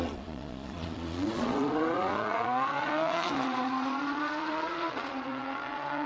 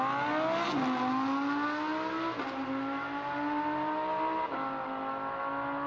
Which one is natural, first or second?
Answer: second